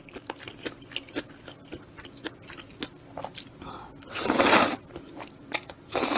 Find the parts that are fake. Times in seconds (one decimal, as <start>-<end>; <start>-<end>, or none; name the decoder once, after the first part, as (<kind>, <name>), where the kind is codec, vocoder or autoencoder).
1.7-4.4 (vocoder, BigVGAN v2)